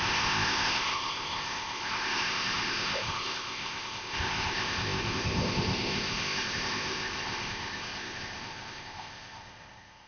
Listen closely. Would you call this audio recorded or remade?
remade